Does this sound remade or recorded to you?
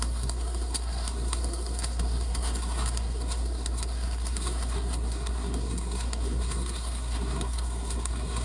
remade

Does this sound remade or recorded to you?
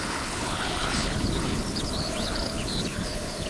remade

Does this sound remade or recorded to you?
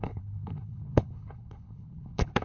remade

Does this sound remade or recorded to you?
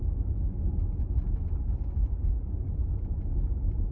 recorded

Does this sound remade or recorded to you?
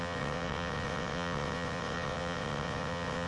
remade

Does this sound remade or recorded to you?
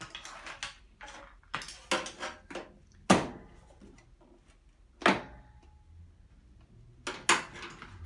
recorded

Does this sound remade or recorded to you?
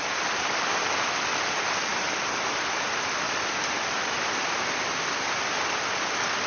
recorded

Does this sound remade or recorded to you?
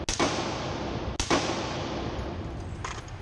recorded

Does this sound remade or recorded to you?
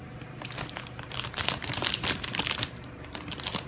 remade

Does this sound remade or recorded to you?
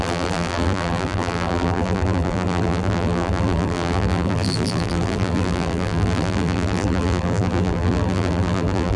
remade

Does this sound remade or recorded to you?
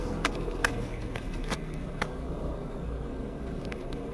remade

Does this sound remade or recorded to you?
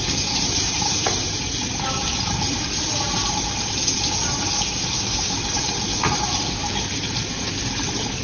remade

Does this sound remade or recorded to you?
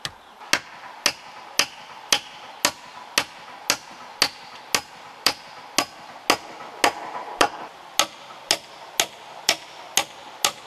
recorded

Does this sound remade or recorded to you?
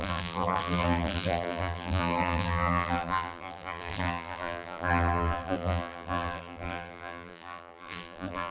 remade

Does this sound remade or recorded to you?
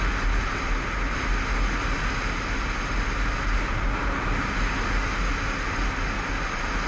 recorded